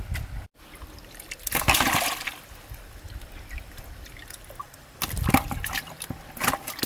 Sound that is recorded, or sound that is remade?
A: recorded